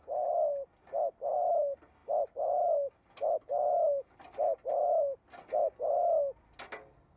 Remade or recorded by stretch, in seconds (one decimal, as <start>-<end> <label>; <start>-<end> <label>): 0.0-7.2 recorded

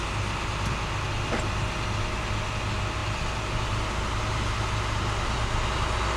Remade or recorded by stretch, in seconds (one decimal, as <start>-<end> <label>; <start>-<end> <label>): 0.0-6.2 recorded

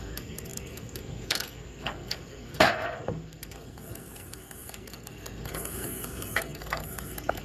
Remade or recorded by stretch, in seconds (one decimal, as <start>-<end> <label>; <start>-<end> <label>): 0.0-7.4 remade

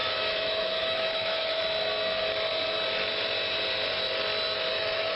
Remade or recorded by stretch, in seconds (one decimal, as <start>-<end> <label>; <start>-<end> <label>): 0.0-1.6 remade; 1.6-4.7 recorded; 4.7-5.2 remade